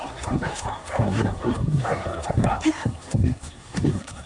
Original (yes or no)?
no